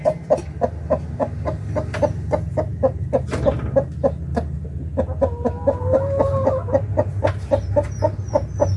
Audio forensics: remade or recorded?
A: recorded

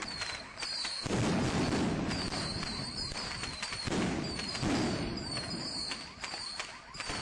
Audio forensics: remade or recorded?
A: recorded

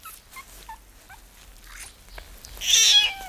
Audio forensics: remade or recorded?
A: recorded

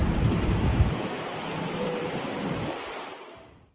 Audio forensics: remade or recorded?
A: remade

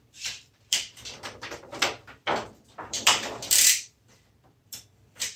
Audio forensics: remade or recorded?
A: remade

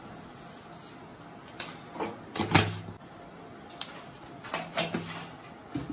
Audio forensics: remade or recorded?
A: recorded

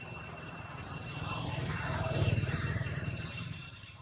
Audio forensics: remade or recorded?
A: remade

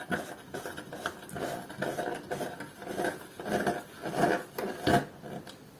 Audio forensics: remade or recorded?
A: recorded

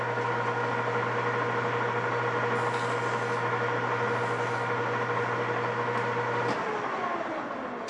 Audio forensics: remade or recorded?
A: recorded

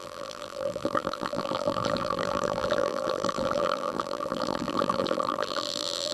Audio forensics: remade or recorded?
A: remade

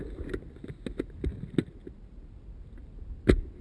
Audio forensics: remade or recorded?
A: recorded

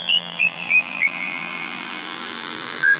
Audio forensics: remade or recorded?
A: remade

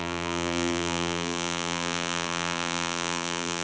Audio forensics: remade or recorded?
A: remade